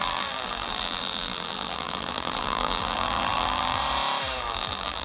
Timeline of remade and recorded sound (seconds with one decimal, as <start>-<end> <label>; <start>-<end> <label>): 0.0-3.8 remade; 3.8-4.4 recorded; 4.4-5.0 remade